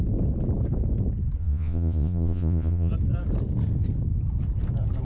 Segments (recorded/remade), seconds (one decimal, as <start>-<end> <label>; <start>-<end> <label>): 0.0-1.4 recorded; 1.4-2.9 remade; 2.9-5.0 recorded